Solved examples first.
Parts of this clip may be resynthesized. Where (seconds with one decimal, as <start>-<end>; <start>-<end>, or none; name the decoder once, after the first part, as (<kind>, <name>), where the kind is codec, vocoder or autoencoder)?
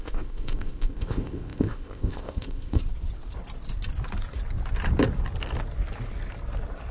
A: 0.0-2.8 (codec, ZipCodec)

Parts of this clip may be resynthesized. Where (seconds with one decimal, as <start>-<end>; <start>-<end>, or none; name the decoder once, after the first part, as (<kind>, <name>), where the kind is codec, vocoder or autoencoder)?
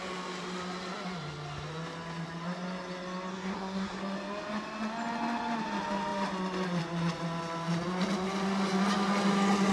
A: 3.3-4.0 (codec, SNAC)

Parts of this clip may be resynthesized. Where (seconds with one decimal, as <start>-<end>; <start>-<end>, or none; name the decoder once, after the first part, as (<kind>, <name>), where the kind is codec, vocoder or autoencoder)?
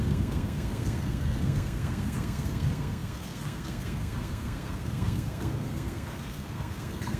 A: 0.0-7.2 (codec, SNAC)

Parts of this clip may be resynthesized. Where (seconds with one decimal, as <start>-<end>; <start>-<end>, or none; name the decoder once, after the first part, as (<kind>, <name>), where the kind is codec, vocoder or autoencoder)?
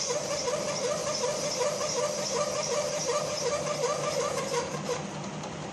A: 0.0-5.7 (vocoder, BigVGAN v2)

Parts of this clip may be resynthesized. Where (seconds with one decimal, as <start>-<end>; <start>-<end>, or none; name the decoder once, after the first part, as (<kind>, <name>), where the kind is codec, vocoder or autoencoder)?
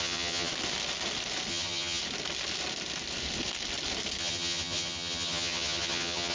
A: 0.0-0.5 (vocoder, HiFi-GAN); 1.5-2.0; 4.2-6.3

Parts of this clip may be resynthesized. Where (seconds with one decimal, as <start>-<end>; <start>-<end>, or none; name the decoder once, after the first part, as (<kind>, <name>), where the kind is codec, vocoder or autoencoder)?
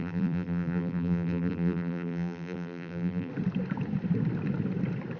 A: 0.0-3.3 (vocoder, BigVGAN v2)